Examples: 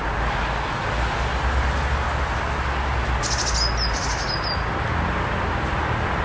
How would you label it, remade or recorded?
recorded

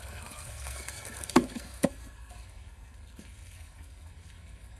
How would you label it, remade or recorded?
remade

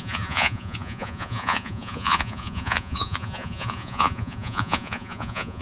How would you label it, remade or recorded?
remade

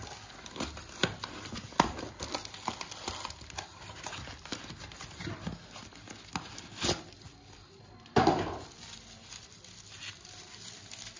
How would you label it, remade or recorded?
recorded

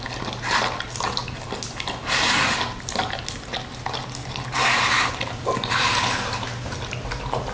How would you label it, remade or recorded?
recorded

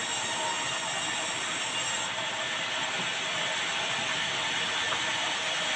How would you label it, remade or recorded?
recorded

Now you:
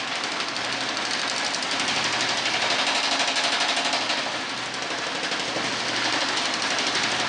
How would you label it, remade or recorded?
recorded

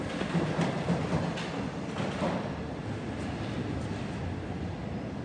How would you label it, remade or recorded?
recorded